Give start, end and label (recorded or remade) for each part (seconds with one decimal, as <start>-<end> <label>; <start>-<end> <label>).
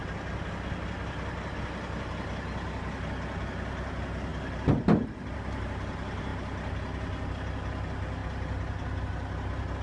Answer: 0.0-9.8 recorded